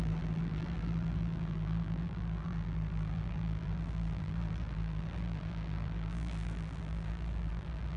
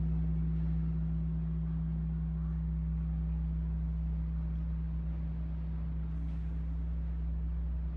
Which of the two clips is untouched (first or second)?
second